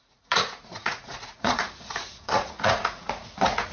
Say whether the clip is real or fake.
fake